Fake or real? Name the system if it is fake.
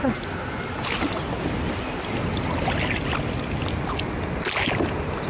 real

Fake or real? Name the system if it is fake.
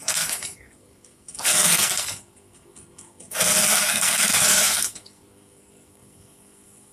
fake, codec, SNAC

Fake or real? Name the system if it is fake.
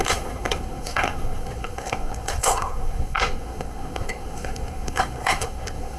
fake, codec, SNAC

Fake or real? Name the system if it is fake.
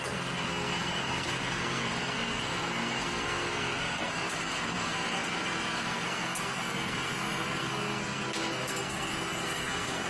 fake, codec, SNAC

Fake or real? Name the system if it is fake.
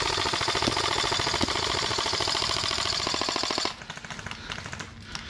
real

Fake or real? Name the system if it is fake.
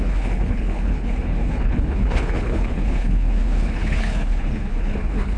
fake, codec, HILCodec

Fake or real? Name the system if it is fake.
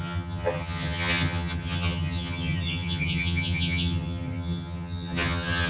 fake, vocoder, HiFi-GAN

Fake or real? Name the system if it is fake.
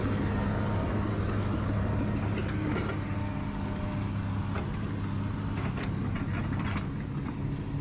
real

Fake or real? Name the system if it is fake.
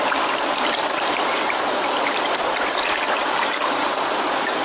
real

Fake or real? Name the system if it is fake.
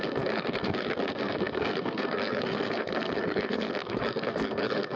fake, codec, SNAC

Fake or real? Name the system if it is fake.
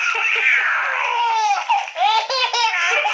fake, vocoder, BigVGAN v2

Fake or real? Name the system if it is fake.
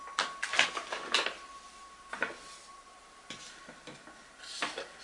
real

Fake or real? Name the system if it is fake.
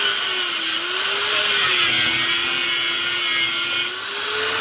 real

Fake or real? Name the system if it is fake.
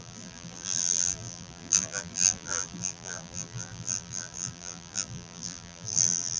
fake, vocoder, BigVGAN v2